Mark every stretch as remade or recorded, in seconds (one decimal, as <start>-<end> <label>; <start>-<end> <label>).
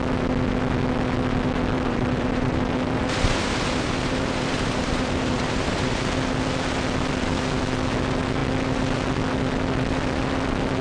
0.0-1.7 recorded; 1.7-6.0 remade; 6.0-10.8 recorded